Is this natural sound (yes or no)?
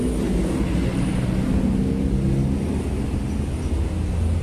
yes